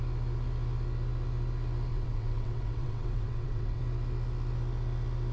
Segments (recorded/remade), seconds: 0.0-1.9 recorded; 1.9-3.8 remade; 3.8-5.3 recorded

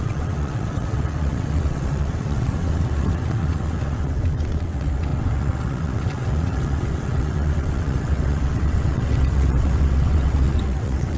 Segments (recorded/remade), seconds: 0.0-11.2 remade